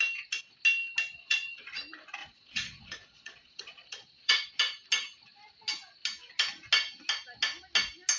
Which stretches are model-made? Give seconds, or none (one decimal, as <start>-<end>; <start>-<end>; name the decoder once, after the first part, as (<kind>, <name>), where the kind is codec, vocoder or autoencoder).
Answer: 1.1-1.8 (vocoder, Vocos); 2.2-4.6